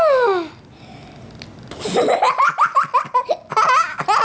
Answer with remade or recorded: recorded